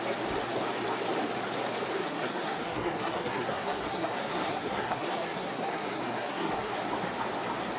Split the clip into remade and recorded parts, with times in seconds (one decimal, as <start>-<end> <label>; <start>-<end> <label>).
0.0-2.0 recorded; 2.0-6.7 remade; 6.7-7.8 recorded